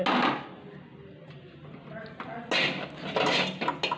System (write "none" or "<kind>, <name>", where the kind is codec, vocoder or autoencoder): none